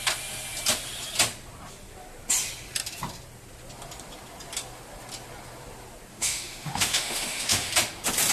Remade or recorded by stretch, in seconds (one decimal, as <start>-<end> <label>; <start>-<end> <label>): 0.0-6.1 recorded; 6.1-7.7 remade; 7.7-8.3 recorded